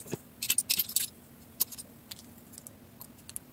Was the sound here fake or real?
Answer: real